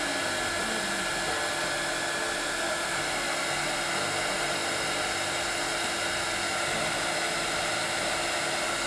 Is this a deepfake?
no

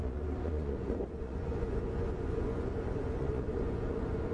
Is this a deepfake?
yes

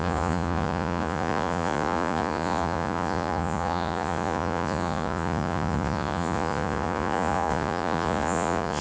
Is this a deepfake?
yes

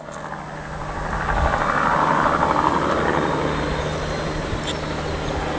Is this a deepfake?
no